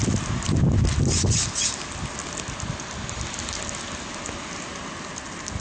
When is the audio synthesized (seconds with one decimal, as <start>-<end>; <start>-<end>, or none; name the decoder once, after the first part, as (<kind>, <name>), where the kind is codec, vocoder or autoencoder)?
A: none